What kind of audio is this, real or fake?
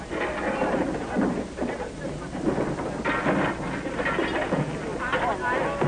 real